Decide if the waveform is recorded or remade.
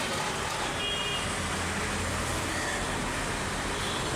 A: recorded